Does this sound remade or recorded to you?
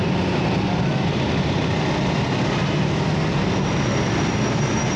recorded